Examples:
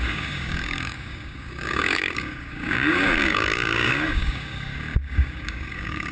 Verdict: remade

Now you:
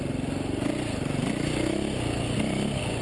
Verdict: recorded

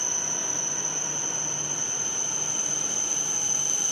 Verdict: recorded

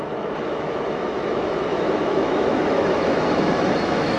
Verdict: remade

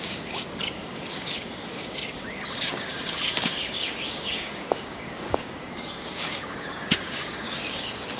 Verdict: remade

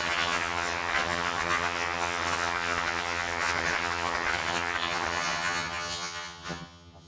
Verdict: remade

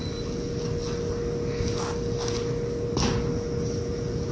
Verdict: recorded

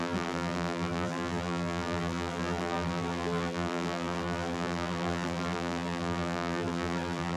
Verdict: remade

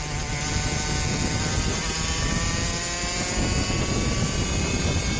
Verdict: recorded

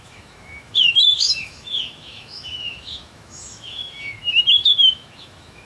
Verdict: remade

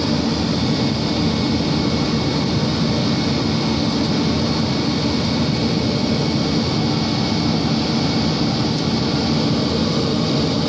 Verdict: recorded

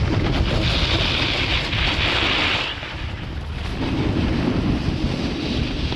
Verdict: recorded